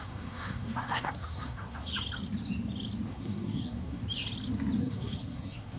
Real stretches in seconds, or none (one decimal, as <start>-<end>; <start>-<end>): 1.9-3.1; 4.0-4.8